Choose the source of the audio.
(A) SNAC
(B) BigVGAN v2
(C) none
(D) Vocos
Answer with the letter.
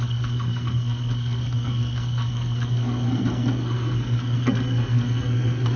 A